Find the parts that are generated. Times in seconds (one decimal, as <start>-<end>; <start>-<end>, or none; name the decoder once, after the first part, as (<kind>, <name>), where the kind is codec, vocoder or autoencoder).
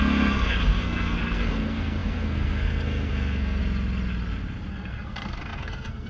0.0-3.6 (codec, SNAC); 4.7-6.1